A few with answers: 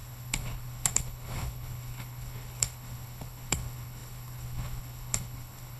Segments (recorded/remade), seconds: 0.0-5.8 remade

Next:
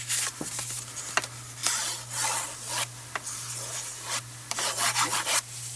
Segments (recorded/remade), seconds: 0.0-5.8 recorded

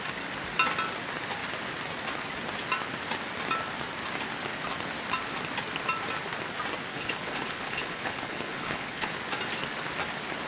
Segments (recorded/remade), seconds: 0.0-6.9 recorded; 6.9-9.1 remade; 9.1-10.5 recorded

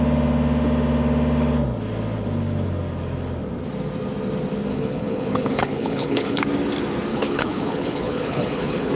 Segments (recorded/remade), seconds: 0.0-4.7 recorded; 4.7-6.4 remade; 6.4-7.1 recorded; 7.1-8.9 remade

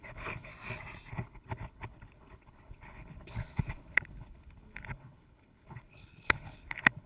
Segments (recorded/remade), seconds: 0.0-0.5 remade; 0.5-1.1 recorded; 1.1-7.1 remade